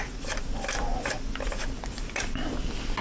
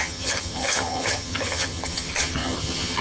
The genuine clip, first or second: first